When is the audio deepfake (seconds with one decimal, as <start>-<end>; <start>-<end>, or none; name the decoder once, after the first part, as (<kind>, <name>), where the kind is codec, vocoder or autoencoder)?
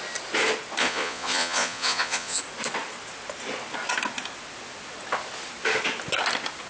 0.8-2.4 (vocoder, Vocos)